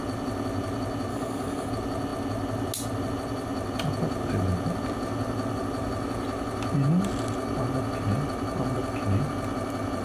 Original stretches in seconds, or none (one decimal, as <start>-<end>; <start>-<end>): 0.0-1.1; 1.7-10.0